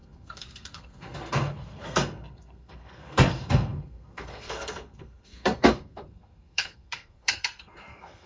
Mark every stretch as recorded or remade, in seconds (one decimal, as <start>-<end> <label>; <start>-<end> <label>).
0.0-8.3 remade